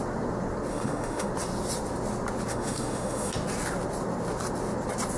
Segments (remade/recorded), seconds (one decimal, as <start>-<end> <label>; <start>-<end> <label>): 0.0-0.7 recorded; 0.7-1.3 remade; 1.3-2.5 recorded; 2.5-3.3 remade; 3.3-5.2 recorded